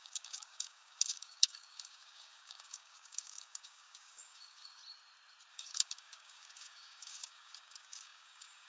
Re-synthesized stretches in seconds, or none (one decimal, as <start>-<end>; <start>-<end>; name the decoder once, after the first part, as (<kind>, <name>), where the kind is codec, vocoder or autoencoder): 0.0-4.8 (codec, DAC); 5.5-8.7

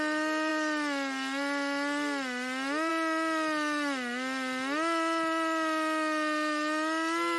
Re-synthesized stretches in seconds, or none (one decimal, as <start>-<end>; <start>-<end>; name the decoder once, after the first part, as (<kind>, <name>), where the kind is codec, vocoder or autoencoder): none

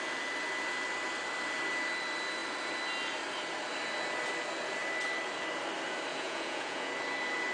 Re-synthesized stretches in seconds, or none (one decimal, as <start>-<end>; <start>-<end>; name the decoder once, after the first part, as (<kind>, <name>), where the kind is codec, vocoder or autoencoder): 6.1-6.9 (vocoder, Vocos)

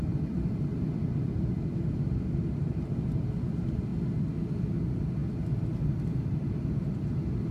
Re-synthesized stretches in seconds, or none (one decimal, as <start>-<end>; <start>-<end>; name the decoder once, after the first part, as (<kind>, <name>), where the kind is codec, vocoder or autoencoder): none

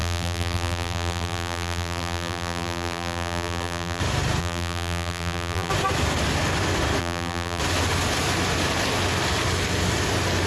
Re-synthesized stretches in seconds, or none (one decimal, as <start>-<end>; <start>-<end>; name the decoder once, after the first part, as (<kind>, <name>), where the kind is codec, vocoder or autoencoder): 0.0-4.0 (vocoder, BigVGAN v2); 4.4-5.7; 7.0-7.6

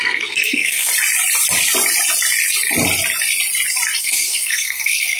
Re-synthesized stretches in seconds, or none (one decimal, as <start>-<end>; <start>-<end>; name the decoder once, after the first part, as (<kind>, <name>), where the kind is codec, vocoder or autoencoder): 0.0-0.9 (codec, SNAC); 4.0-5.2